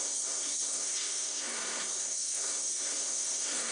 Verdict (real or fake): fake